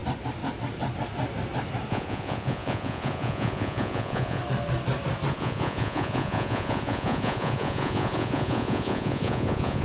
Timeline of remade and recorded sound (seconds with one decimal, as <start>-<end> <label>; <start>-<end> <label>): 0.0-1.9 recorded; 1.9-4.4 remade; 4.4-5.3 recorded; 5.3-9.8 remade

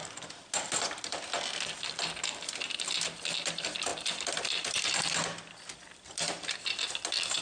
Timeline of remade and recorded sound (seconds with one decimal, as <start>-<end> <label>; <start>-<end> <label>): 0.0-7.4 recorded

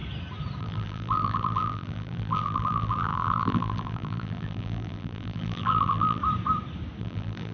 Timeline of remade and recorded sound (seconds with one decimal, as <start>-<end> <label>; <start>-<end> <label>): 0.0-0.6 recorded; 0.6-6.2 remade; 6.2-7.0 recorded; 7.0-7.5 remade

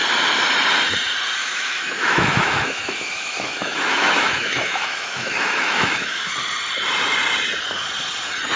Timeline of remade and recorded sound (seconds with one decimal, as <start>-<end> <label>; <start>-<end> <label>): 0.0-1.4 recorded; 1.4-6.3 remade; 6.3-8.6 recorded